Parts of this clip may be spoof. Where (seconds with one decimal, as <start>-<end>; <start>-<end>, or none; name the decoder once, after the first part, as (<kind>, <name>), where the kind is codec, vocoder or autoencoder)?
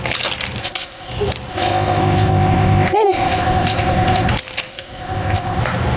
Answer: 0.6-1.1 (codec, ZipCodec); 1.5-4.3; 4.7-5.6